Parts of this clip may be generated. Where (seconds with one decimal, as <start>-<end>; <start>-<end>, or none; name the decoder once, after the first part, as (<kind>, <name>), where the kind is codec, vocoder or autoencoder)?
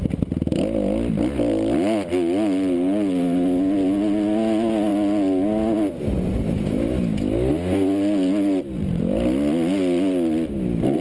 none